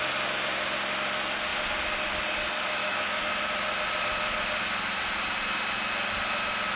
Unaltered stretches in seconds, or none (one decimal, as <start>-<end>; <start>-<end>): 0.0-2.8; 3.4-6.8